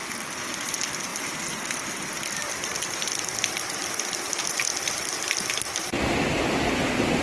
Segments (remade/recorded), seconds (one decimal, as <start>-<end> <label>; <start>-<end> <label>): 0.0-0.7 remade; 0.7-4.7 recorded; 4.7-6.1 remade; 6.1-7.2 recorded